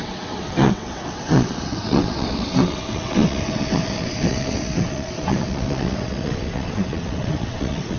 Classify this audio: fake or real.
fake